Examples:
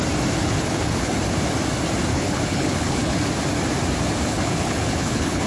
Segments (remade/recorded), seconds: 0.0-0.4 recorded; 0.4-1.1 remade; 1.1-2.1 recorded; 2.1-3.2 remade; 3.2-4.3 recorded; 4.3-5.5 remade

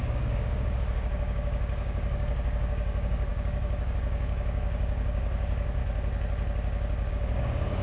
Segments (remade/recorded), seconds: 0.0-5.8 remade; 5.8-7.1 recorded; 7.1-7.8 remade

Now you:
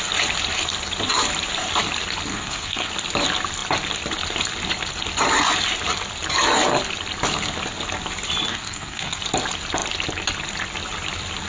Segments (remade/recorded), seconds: 0.0-2.3 recorded; 2.3-2.9 remade; 2.9-8.5 recorded; 8.5-9.2 remade; 9.2-11.5 recorded

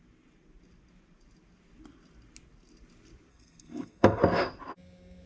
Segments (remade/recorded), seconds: 0.0-3.3 recorded; 3.3-4.2 remade; 4.2-5.3 recorded

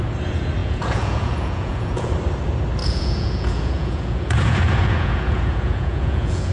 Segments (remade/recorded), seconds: 0.0-0.6 recorded; 0.6-2.1 remade; 2.1-2.8 recorded; 2.8-6.5 remade

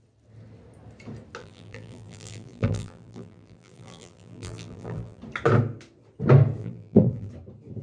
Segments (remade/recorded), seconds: 0.0-1.4 recorded; 1.4-5.2 remade; 5.2-6.6 recorded; 6.6-7.3 remade; 7.3-7.8 recorded